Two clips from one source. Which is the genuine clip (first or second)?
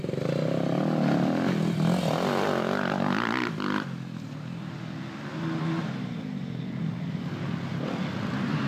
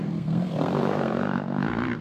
first